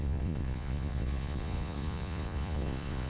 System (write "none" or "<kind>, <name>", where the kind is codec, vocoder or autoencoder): vocoder, Vocos